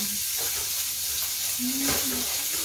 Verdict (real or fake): real